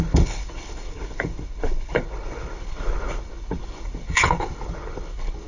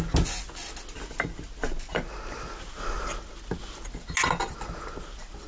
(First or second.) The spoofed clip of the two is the first